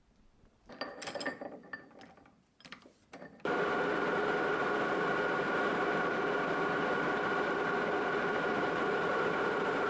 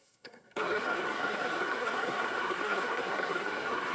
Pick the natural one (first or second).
first